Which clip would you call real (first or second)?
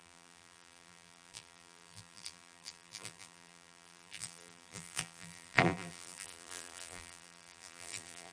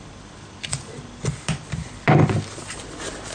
second